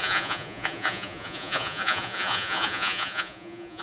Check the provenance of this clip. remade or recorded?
remade